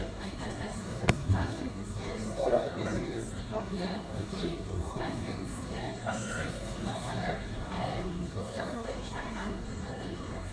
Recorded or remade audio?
remade